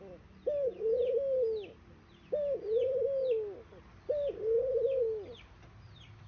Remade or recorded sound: recorded